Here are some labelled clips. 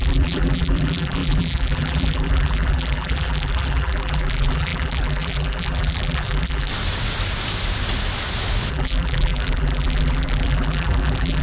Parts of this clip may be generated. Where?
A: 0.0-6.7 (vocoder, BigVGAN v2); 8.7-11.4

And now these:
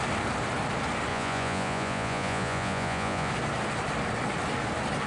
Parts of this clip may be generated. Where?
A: 1.1-3.3 (vocoder, Vocos)

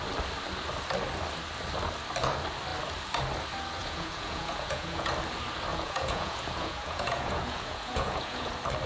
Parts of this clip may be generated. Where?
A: 3.8-5.1 (vocoder, Vocos); 5.7-8.5

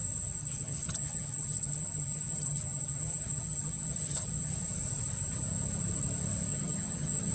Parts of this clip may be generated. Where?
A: 0.4-4.5 (vocoder, HiFi-GAN); 6.5-7.3

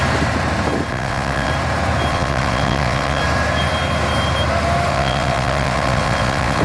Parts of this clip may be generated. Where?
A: 0.9-1.5 (vocoder, WaveNeXt); 2.1-3.2; 4.9-6.6

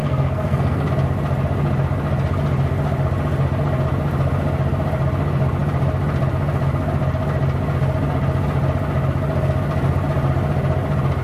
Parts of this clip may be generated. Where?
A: 0.0-0.9 (codec, SNAC)

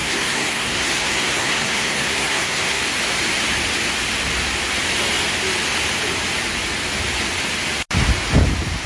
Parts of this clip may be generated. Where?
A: 0.0-2.8 (codec, SNAC)